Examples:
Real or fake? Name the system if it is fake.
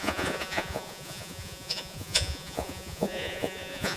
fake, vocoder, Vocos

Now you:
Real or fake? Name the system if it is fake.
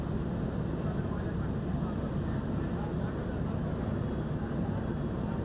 real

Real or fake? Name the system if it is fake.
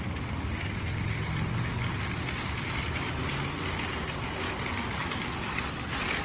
real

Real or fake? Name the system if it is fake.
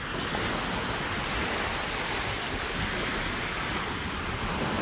real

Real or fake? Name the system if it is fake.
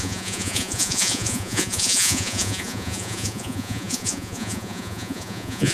fake, vocoder, Vocos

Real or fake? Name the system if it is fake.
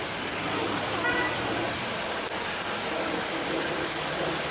real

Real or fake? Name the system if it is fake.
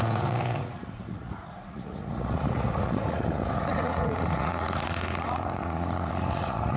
fake, vocoder, Vocos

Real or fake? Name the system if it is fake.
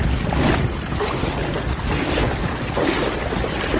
real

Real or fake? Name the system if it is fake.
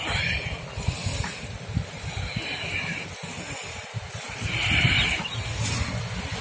real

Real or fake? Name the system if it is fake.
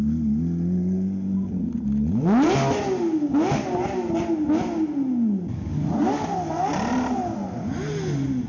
real